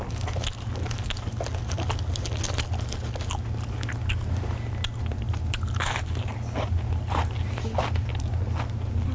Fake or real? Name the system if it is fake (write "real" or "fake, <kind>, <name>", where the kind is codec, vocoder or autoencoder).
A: real